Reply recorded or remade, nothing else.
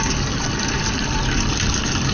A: recorded